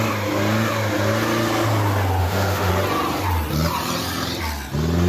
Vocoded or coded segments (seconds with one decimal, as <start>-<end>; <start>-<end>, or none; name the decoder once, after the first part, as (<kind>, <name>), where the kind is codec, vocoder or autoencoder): 2.2-2.7 (autoencoder, DAC-VAE)